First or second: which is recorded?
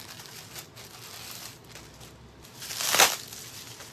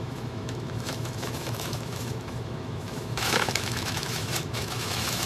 first